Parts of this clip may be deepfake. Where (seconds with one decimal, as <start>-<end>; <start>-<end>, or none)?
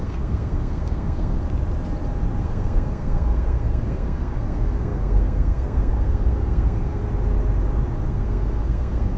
0.0-1.4; 2.4-7.0; 8.1-9.2